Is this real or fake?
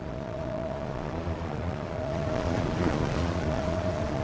fake